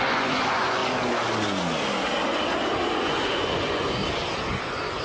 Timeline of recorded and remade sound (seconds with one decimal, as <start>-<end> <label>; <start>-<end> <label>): 0.0-0.8 remade; 0.8-3.0 recorded; 3.0-4.0 remade; 4.0-4.6 recorded; 4.6-5.0 remade